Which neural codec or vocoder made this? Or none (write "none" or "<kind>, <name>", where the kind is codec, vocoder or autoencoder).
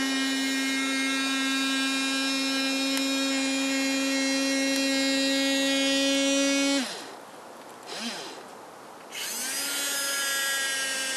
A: none